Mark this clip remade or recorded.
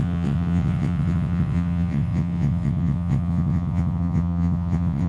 remade